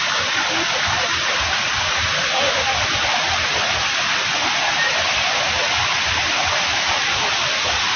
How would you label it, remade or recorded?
recorded